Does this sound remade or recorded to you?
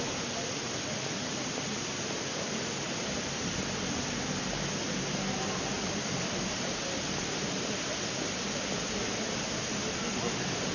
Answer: recorded